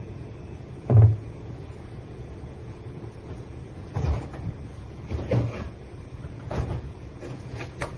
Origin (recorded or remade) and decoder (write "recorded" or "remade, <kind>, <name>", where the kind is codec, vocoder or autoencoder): remade, vocoder, Vocos